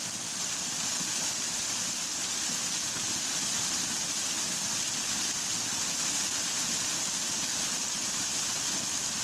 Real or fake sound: real